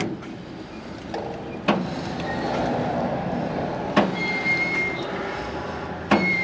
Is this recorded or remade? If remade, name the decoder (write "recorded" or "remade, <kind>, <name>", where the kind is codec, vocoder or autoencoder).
recorded